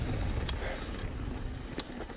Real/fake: real